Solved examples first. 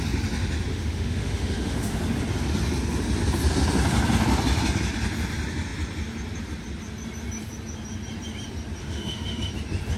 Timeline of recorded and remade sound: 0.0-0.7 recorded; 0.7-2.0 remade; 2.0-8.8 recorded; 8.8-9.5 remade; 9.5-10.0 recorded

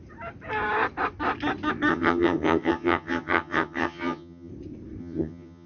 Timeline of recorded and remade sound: 0.0-1.9 recorded; 1.9-4.5 remade; 4.5-5.0 recorded; 5.0-5.7 remade

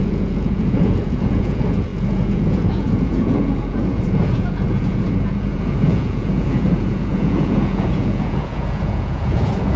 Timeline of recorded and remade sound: 0.0-9.8 remade

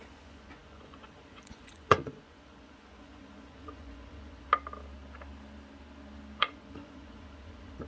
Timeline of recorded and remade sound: 0.0-4.5 remade; 4.5-6.4 recorded; 6.4-7.9 remade

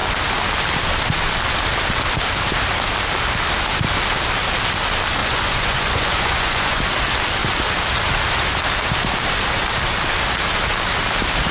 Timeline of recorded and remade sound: 0.0-5.2 recorded; 5.2-6.8 remade; 6.8-11.5 recorded